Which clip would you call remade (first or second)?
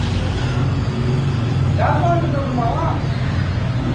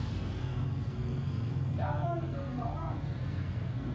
second